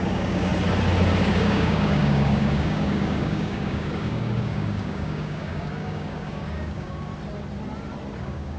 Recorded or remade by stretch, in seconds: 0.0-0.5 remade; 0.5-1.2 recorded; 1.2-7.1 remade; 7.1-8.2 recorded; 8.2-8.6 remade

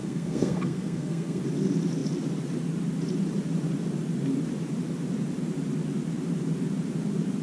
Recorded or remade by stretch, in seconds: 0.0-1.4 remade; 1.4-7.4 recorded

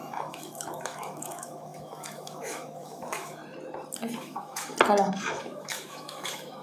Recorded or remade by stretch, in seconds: 0.0-3.4 remade; 3.4-4.2 recorded; 4.2-4.7 remade; 4.7-5.3 recorded; 5.3-6.6 remade

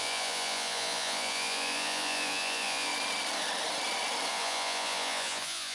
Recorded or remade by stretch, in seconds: 0.0-2.9 remade; 2.9-4.3 recorded; 4.3-5.7 remade

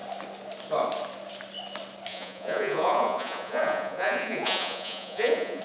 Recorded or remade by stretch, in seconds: 0.0-2.1 recorded; 2.1-5.6 remade